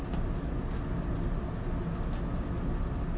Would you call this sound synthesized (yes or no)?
no